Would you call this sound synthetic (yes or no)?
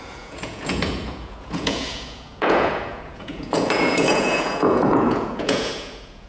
yes